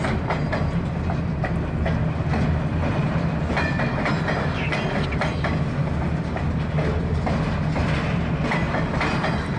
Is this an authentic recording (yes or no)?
yes